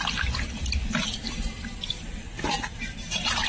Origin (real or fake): real